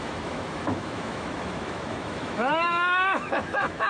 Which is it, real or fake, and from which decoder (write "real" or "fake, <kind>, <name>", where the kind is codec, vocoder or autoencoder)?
fake, autoencoder, DAC-VAE